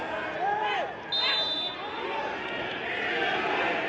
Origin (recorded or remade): recorded